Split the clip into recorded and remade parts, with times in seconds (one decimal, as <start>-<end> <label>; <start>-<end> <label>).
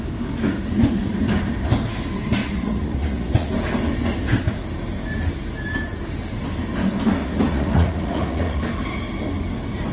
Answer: 0.0-2.4 recorded; 2.4-3.5 remade; 3.5-7.2 recorded; 7.2-8.6 remade; 8.6-9.9 recorded